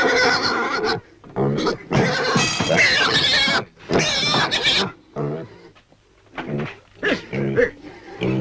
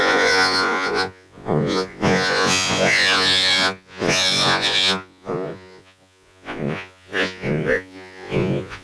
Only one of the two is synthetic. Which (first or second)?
second